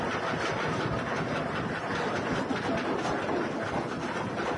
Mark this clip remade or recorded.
recorded